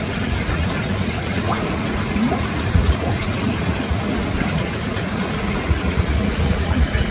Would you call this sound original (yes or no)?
no